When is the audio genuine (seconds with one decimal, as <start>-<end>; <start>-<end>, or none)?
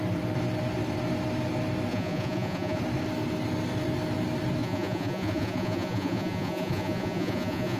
0.0-1.9; 2.8-4.6